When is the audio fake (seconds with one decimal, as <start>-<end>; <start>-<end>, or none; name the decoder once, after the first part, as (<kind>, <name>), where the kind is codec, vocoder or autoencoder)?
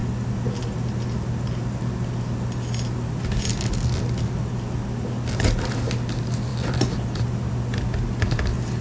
none